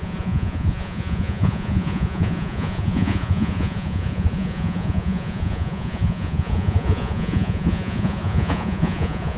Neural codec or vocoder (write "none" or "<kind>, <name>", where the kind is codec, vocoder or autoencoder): vocoder, Vocos